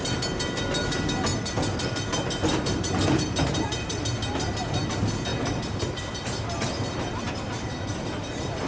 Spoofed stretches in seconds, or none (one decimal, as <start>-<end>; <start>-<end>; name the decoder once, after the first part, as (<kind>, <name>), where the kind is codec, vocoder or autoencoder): 1.3-4.0 (vocoder, BigVGAN v2); 5.3-8.7